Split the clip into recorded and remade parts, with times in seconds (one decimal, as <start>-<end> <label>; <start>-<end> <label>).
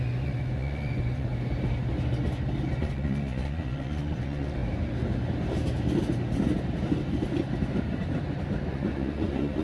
0.0-1.3 remade; 1.3-2.8 recorded; 2.8-4.6 remade; 4.6-8.7 recorded; 8.7-9.6 remade